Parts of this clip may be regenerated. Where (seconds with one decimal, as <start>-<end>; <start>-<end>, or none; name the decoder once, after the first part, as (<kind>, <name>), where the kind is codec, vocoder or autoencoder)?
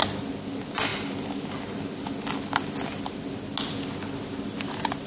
none